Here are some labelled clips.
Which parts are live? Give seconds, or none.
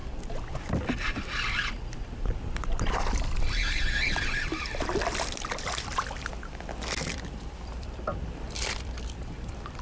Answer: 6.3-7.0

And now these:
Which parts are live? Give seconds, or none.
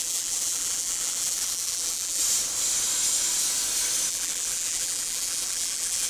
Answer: 2.2-4.1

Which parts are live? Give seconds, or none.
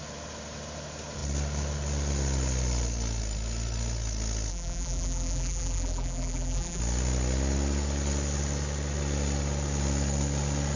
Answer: 0.0-4.5; 6.8-10.8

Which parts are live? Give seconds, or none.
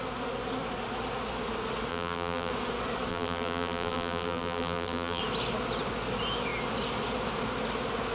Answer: 0.0-1.9; 2.5-3.1; 5.2-8.1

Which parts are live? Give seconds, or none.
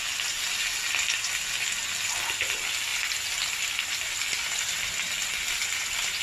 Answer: 0.0-6.2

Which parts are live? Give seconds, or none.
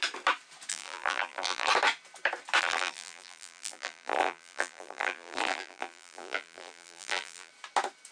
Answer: 0.0-0.7; 1.7-2.6; 7.5-8.1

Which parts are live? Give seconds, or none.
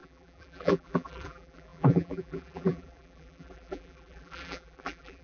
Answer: none